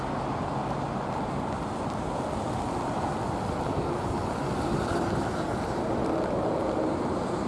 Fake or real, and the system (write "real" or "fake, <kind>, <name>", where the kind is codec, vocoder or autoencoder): real